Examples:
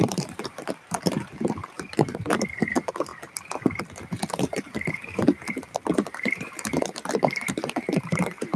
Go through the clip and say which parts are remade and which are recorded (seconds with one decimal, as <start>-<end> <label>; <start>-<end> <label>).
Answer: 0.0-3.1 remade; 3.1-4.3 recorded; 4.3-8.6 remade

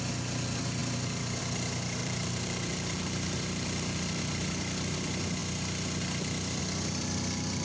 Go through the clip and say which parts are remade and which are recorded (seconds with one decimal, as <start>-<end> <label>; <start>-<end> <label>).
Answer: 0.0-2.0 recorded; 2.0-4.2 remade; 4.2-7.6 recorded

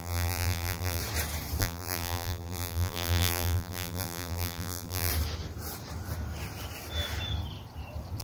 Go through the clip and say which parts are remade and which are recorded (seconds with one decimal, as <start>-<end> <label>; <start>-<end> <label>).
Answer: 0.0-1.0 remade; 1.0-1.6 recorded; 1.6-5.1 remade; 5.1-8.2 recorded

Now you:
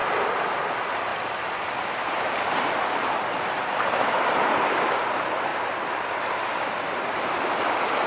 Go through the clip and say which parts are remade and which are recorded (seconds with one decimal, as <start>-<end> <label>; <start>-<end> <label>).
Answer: 0.0-0.6 remade; 0.6-1.1 recorded; 1.1-2.7 remade; 2.7-5.5 recorded; 5.5-8.1 remade

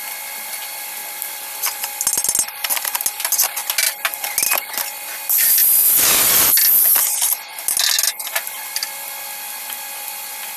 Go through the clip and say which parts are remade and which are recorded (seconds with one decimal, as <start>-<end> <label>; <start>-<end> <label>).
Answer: 0.0-10.6 recorded

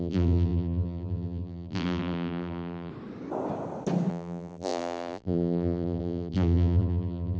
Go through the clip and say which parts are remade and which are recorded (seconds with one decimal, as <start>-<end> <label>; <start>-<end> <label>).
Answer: 0.0-2.9 remade; 2.9-4.1 recorded; 4.1-7.4 remade